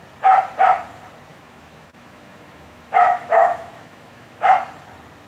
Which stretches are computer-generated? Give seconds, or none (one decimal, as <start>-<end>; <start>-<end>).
1.3-4.5